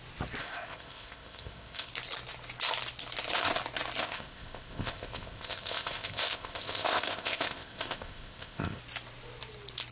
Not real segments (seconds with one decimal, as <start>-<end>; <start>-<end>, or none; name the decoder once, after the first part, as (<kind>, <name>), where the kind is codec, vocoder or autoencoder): 0.4-1.9 (codec, ZipCodec); 4.0-8.8